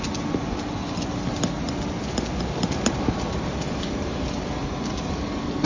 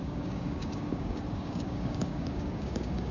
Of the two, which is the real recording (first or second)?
first